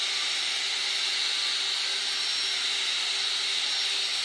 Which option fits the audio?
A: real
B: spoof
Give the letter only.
A